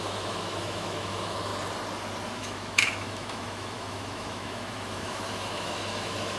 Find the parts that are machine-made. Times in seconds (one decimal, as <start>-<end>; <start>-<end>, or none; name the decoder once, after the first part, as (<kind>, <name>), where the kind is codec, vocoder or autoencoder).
0.0-1.5 (autoencoder, DAC-VAE); 2.2-6.4